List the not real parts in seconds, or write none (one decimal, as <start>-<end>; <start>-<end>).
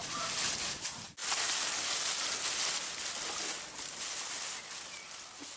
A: none